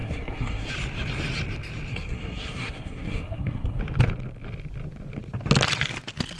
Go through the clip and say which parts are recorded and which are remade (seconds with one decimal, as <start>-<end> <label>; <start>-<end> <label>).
0.0-0.7 remade; 0.7-1.9 recorded; 1.9-3.8 remade; 3.8-6.4 recorded